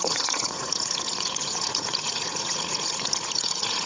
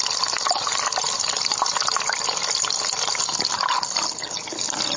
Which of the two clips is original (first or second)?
second